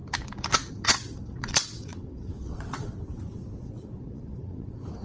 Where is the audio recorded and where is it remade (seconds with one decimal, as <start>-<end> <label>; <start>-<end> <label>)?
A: 0.0-0.7 recorded; 0.7-5.0 remade